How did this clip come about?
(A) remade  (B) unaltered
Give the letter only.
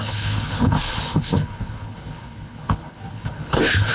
A